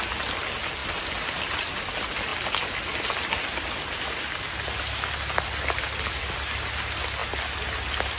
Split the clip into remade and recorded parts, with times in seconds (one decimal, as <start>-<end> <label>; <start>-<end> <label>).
0.0-8.2 recorded